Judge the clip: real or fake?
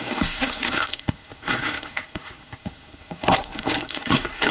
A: fake